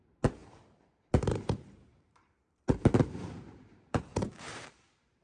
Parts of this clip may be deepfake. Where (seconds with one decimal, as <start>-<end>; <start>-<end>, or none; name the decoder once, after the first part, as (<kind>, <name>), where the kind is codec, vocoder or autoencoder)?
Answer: 0.0-5.2 (vocoder, BigVGAN v2)